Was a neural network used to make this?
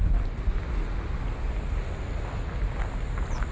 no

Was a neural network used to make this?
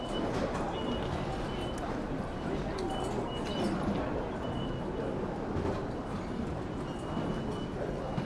no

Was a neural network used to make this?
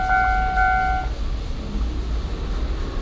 no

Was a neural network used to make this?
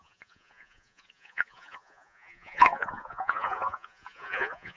yes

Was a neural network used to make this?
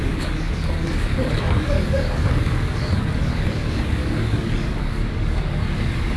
yes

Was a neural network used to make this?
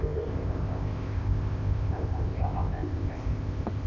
yes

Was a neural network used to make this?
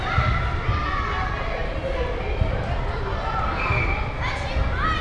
no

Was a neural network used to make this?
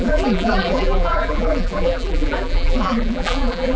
yes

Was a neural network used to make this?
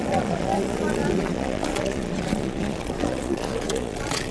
yes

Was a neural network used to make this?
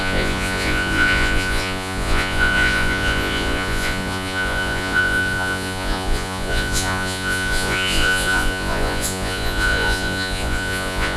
yes